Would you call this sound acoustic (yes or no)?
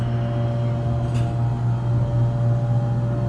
yes